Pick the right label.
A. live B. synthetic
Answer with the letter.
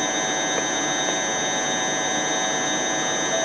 A